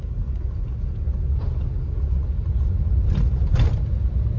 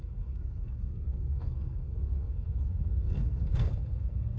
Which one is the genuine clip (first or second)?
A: first